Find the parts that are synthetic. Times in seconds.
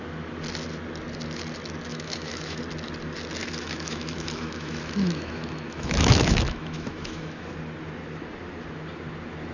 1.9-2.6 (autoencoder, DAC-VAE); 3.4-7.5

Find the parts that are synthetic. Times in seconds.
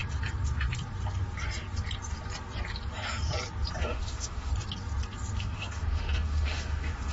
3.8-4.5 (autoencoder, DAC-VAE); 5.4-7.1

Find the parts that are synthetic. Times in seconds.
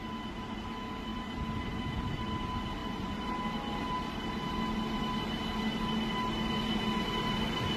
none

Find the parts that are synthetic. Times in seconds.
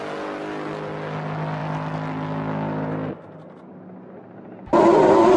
none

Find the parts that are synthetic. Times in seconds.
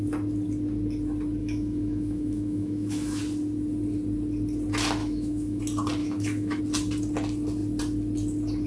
1.4-3.2 (autoencoder, DAC-VAE); 5.0-5.6; 6.0-6.6